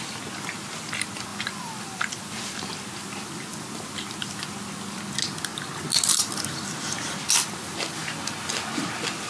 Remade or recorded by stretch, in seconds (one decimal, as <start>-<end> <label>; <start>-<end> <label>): 0.0-1.3 recorded; 1.3-1.8 remade; 1.8-9.3 recorded